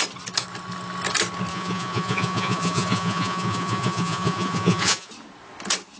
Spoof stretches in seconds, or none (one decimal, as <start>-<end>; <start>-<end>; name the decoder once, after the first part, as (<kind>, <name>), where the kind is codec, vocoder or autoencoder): 1.5-5.1 (vocoder, Vocos)